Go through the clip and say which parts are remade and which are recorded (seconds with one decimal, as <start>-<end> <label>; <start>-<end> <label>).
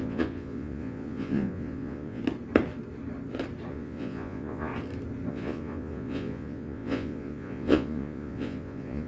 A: 0.0-2.2 remade; 2.2-3.7 recorded; 3.7-4.7 remade; 4.7-5.3 recorded; 5.3-9.1 remade